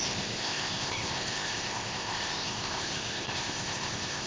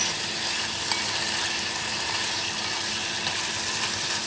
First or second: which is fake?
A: first